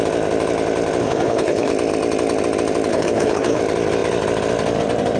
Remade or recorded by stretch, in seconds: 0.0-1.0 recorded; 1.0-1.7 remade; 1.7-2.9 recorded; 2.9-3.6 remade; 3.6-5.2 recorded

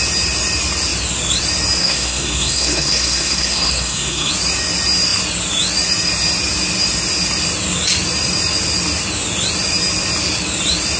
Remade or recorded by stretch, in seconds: 0.0-1.8 recorded; 1.8-4.3 remade; 4.3-11.0 recorded

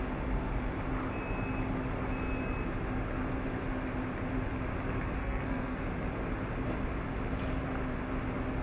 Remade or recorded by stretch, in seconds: 0.0-5.2 recorded; 5.2-5.8 remade; 5.8-8.6 recorded